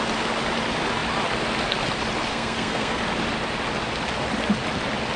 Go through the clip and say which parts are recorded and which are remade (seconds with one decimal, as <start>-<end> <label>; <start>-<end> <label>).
0.0-2.3 recorded; 2.3-3.0 remade; 3.0-5.2 recorded